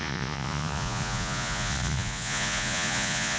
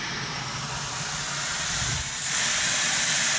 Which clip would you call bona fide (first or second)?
second